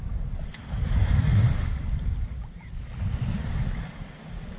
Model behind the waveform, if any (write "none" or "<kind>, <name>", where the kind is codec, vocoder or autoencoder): none